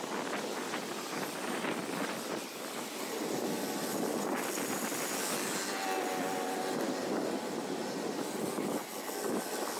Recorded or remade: recorded